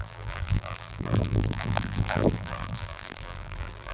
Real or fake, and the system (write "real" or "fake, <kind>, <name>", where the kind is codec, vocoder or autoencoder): fake, vocoder, BigVGAN v2